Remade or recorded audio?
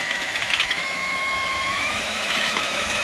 remade